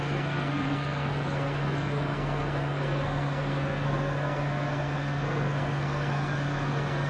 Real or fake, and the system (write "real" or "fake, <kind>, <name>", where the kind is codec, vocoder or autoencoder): fake, codec, SNAC